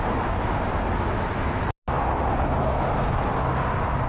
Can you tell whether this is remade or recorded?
recorded